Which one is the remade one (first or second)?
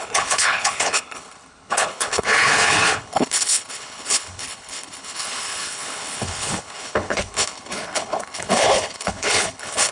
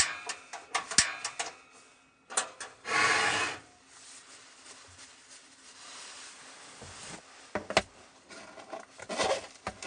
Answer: first